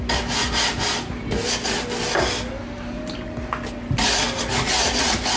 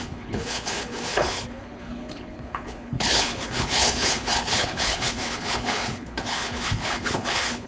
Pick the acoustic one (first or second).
first